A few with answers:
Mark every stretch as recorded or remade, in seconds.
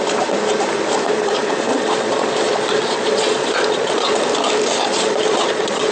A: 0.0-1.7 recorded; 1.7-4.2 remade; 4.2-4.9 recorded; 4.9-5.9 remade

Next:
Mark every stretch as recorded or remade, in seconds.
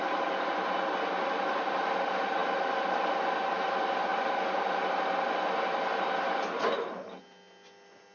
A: 0.0-8.1 recorded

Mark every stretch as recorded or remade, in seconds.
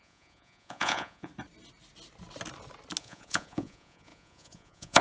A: 0.0-1.3 remade; 1.3-3.0 recorded; 3.0-5.0 remade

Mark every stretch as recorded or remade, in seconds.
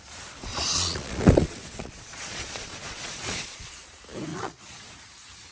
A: 0.0-0.5 recorded; 0.5-3.8 remade; 3.8-4.3 recorded; 4.3-4.9 remade; 4.9-5.5 recorded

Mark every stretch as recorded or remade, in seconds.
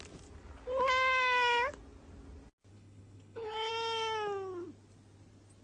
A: 0.0-2.7 recorded; 2.7-3.7 remade; 3.7-5.6 recorded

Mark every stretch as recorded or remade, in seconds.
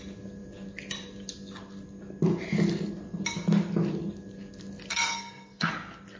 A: 0.0-4.9 recorded; 4.9-5.7 remade; 5.7-6.2 recorded